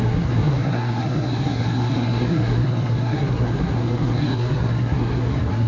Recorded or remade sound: remade